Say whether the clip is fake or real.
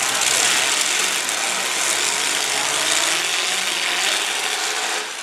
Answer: real